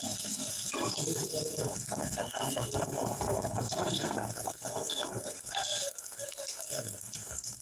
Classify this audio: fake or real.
fake